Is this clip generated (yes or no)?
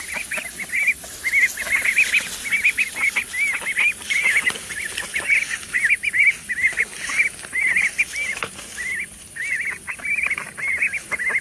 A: no